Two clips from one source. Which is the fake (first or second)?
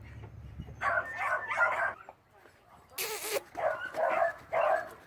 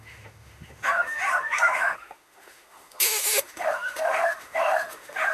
second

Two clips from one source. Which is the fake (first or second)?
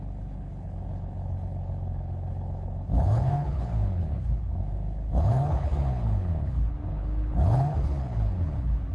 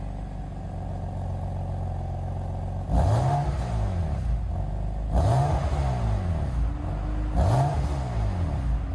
first